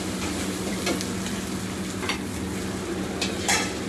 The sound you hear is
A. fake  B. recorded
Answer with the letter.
B